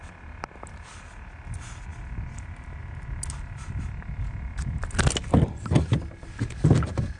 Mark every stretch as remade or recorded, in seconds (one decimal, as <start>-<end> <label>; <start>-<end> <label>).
0.0-7.2 recorded